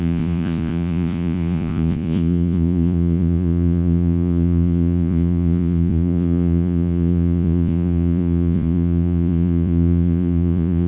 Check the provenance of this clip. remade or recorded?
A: remade